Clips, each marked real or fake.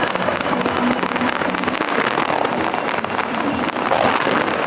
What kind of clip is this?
real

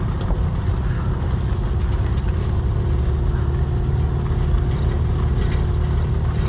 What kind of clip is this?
real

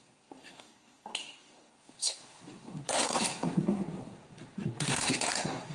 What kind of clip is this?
fake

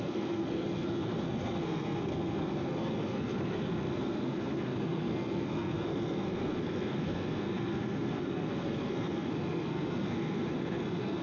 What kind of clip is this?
fake